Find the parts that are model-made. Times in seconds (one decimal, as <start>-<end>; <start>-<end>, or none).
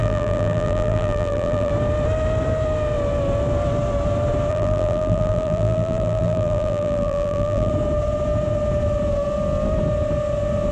0.0-1.7; 4.5-7.7